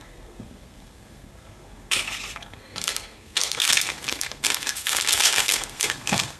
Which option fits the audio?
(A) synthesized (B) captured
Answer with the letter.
A